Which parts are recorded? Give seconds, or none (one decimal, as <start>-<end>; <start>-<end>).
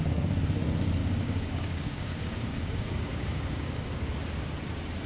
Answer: 0.0-1.0; 4.1-5.1